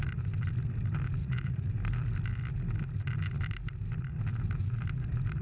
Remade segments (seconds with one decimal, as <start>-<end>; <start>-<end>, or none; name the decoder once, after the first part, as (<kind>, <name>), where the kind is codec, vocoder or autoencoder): 1.2-1.7 (vocoder, Vocos)